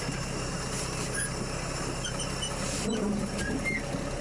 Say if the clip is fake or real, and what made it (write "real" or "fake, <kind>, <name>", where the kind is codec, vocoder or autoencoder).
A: real